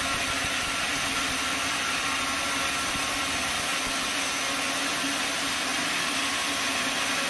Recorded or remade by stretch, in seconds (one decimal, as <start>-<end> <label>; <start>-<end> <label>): 0.0-7.3 recorded